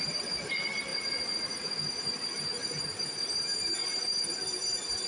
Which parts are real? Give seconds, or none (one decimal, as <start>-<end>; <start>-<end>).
0.9-2.8; 3.8-4.4